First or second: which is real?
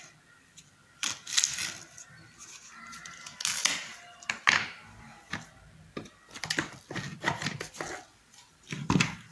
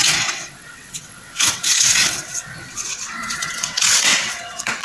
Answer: first